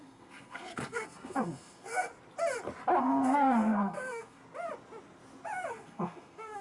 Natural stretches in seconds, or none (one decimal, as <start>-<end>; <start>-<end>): 2.1-3.0; 4.4-5.7